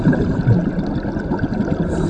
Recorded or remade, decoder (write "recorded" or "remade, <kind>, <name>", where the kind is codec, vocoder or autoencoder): recorded